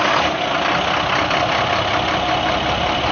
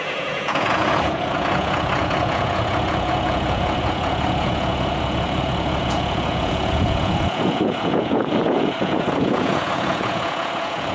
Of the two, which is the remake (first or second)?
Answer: second